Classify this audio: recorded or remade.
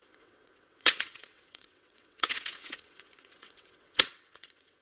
remade